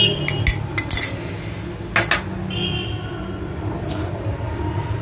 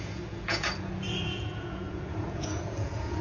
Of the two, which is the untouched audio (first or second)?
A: first